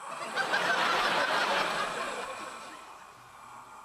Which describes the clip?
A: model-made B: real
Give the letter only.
B